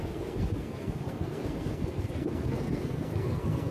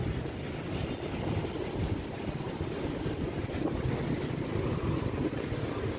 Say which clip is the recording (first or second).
second